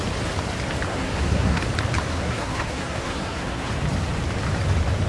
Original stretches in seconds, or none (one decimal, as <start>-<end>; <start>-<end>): 0.0-0.9; 1.6-2.1; 3.7-5.1